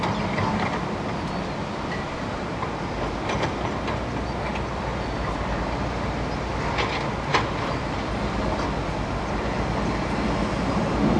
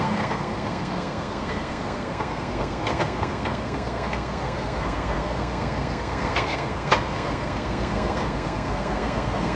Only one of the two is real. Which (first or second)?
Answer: first